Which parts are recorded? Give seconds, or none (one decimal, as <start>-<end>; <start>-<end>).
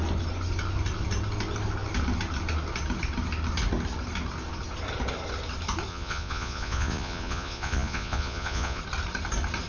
0.0-5.9; 8.8-9.7